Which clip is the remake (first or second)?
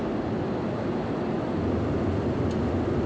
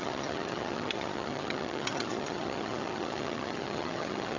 second